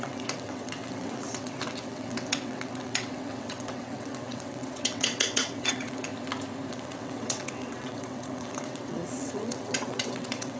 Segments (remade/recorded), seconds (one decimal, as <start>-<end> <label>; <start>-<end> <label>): 0.0-6.1 remade; 6.1-6.7 recorded; 6.7-10.6 remade